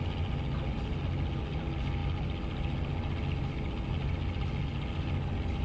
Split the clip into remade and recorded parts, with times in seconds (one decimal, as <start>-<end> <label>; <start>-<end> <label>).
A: 0.0-5.6 recorded